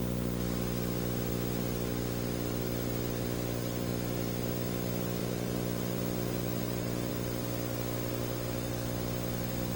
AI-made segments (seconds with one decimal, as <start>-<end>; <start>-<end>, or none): 5.2-7.1